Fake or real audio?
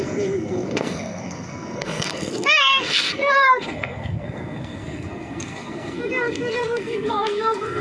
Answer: fake